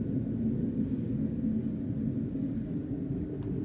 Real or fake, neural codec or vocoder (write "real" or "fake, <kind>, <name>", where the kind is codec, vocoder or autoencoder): real